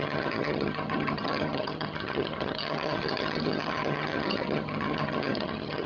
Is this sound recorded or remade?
remade